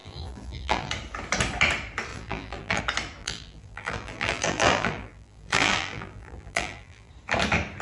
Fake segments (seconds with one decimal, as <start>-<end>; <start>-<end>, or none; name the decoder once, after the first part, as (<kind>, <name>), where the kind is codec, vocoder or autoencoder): 0.0-0.9 (vocoder, BigVGAN v2); 2.1-2.8; 3.2-7.1